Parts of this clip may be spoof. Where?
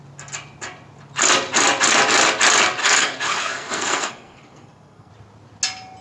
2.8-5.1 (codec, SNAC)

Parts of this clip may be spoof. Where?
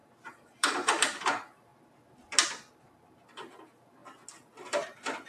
0.0-1.7 (vocoder, BigVGAN v2); 2.7-4.0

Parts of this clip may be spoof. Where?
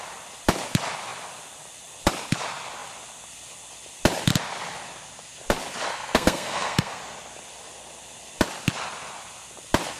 5.9-7.0 (codec, SNAC)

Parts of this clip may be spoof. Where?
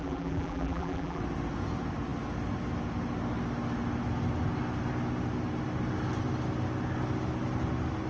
0.0-1.2 (vocoder, BigVGAN v2)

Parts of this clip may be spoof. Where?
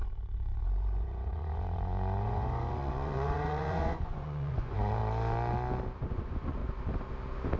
0.0-5.0 (vocoder, Vocos); 6.1-6.6